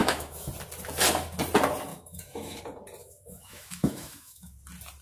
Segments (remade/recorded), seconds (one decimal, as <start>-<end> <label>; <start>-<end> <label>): 0.0-0.5 remade; 0.5-1.9 recorded; 1.9-2.6 remade; 2.6-3.0 recorded; 3.0-4.6 remade; 4.6-5.0 recorded